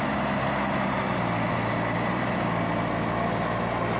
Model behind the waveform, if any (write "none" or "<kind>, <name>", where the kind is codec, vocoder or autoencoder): none